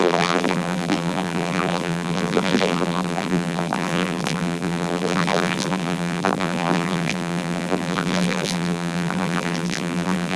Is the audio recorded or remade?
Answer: remade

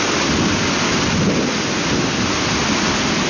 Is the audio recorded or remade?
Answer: recorded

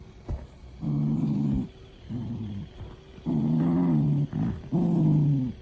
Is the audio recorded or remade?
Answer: remade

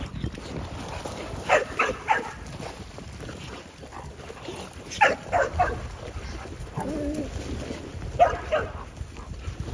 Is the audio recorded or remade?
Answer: recorded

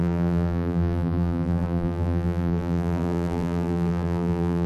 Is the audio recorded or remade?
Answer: remade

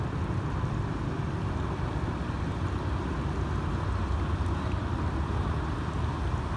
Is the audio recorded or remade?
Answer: recorded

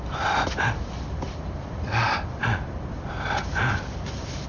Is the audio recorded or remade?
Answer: remade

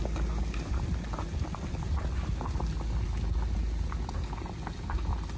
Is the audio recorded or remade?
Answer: recorded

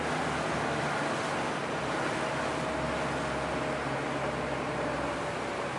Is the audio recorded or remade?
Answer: recorded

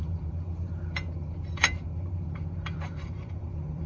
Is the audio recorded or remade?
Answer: remade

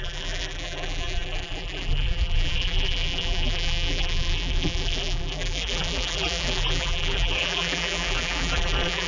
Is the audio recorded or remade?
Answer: remade